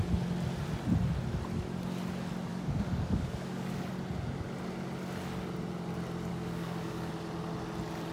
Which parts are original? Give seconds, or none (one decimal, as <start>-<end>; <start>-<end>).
0.0-2.5; 3.9-6.3; 7.1-8.1